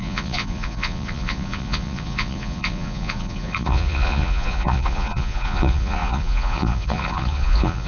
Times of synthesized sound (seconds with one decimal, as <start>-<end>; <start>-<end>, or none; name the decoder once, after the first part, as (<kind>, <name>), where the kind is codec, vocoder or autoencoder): 0.0-7.9 (vocoder, Vocos)